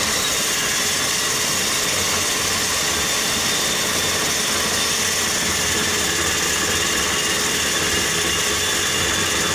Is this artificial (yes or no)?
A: no